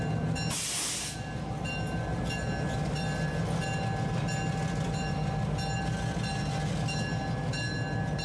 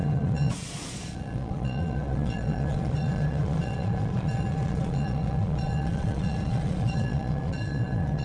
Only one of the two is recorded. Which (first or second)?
first